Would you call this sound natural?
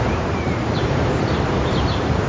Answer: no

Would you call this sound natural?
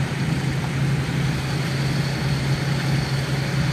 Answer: yes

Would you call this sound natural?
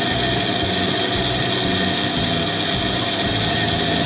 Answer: yes